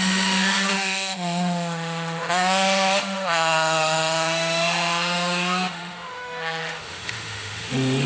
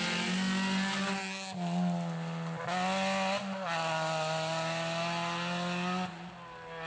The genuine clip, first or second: second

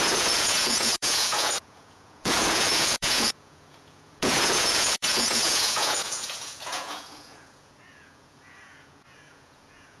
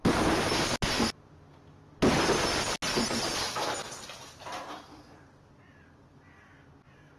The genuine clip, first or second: second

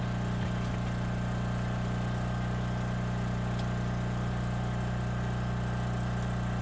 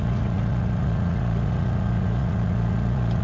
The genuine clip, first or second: first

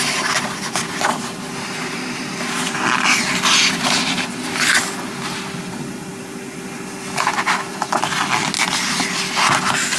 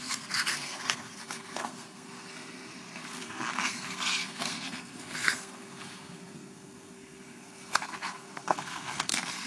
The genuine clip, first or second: first